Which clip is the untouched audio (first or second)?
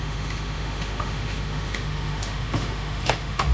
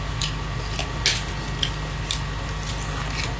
second